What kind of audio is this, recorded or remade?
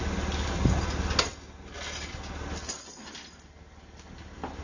recorded